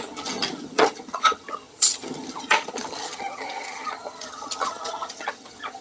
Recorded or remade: remade